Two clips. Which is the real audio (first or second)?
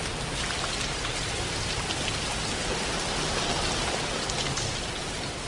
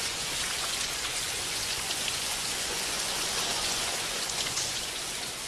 first